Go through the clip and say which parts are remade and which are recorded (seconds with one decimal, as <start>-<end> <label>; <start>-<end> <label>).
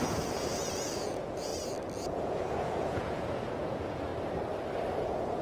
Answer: 0.0-1.5 remade; 1.5-2.1 recorded; 2.1-4.1 remade; 4.1-5.0 recorded; 5.0-5.4 remade